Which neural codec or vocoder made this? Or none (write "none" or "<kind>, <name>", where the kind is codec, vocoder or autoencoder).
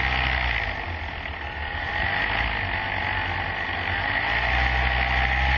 none